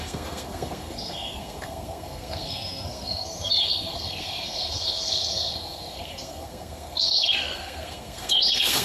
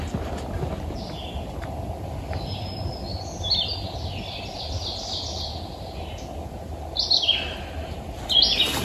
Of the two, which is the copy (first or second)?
first